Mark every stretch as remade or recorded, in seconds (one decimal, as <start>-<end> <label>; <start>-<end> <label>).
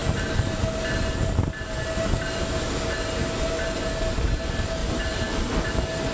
0.0-6.1 recorded